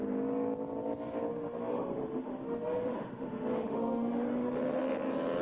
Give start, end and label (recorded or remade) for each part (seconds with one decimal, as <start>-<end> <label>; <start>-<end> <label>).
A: 0.0-1.3 recorded; 1.3-4.5 remade; 4.5-5.4 recorded